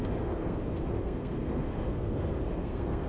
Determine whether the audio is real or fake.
fake